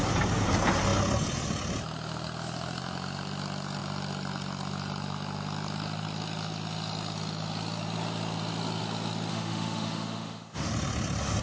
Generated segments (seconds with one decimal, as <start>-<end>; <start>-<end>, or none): 9.3-10.7